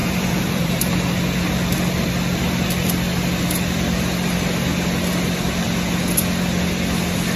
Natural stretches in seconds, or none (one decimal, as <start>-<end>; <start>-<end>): 0.8-7.4